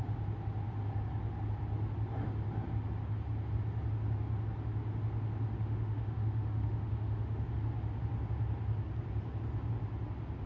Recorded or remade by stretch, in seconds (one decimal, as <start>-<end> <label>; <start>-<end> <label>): 0.0-5.6 recorded; 5.6-7.5 remade; 7.5-10.5 recorded